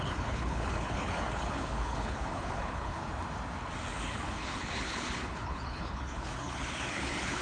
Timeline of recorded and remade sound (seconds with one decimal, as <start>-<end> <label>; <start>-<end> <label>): 0.0-3.0 remade; 3.0-4.0 recorded; 4.0-7.4 remade